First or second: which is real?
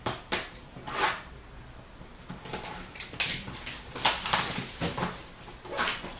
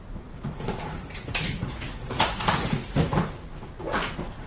first